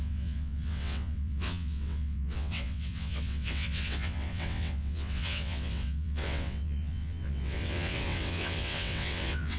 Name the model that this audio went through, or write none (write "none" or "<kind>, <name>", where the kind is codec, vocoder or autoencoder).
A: vocoder, WaveNeXt